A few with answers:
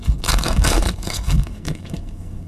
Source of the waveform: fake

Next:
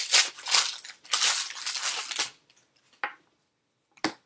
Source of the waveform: real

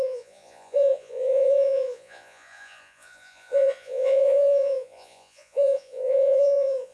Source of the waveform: fake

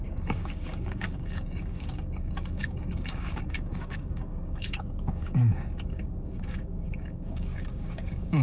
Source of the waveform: fake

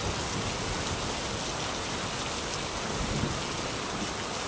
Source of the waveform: real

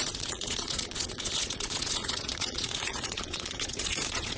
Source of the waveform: fake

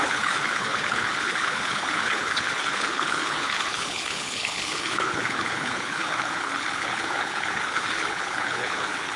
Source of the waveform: fake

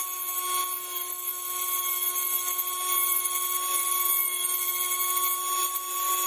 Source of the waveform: real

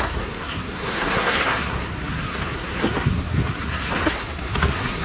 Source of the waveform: fake